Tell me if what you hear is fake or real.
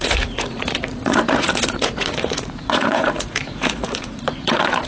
fake